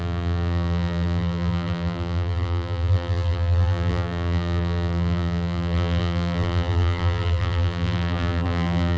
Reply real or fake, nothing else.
fake